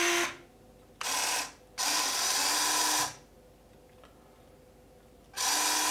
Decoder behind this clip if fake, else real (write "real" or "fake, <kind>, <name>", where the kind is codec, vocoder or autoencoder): real